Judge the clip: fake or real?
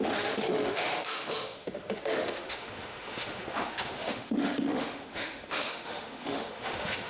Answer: fake